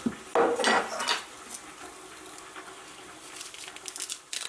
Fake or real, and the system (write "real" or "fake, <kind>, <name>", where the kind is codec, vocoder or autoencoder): real